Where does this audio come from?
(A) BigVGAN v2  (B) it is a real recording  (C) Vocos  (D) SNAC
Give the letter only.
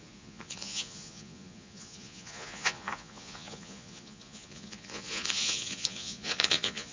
C